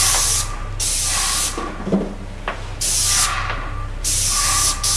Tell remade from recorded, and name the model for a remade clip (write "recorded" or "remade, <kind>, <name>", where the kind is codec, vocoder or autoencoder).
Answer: recorded